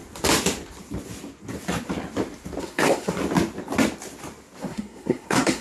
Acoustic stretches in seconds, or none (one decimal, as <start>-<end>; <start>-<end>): 0.0-2.6; 3.2-4.6